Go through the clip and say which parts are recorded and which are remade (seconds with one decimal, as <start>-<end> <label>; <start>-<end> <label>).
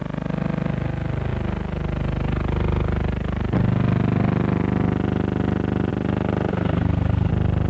0.0-6.5 recorded; 6.5-7.3 remade; 7.3-7.7 recorded